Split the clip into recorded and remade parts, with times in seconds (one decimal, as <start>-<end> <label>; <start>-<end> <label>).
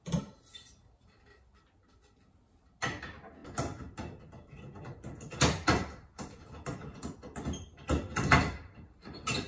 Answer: 0.0-9.5 recorded